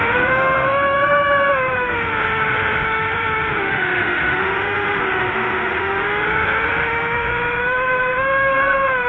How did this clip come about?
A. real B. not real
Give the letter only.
B